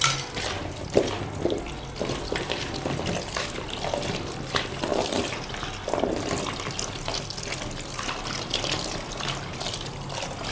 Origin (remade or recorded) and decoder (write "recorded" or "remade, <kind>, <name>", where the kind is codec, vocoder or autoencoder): recorded